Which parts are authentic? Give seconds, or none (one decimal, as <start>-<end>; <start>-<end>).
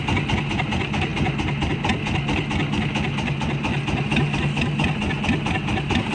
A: 0.0-6.1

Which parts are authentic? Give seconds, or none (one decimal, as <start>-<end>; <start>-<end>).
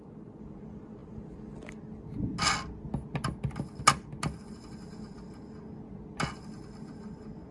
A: 0.0-7.5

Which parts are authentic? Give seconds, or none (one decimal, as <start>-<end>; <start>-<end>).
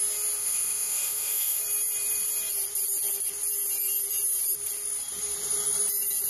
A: 0.0-0.4; 1.6-6.3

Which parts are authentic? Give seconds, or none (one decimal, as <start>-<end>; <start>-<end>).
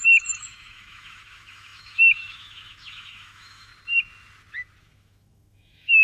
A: 3.7-4.8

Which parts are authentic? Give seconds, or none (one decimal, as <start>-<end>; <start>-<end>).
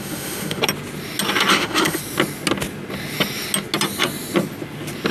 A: 0.6-1.5; 2.0-5.1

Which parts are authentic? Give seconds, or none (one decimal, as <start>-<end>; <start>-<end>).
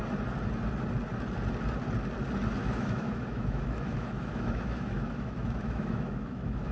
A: 0.0-2.6